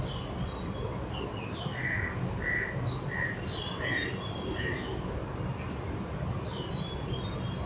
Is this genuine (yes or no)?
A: yes